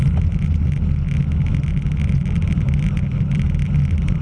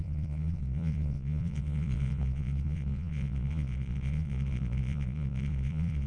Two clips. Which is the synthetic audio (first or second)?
second